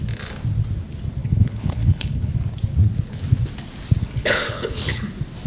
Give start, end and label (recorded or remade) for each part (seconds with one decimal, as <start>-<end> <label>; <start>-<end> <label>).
0.0-1.2 recorded; 1.2-2.3 remade; 2.3-4.0 recorded; 4.0-5.0 remade; 5.0-5.5 recorded